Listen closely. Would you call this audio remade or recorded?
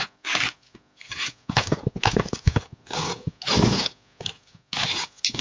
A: recorded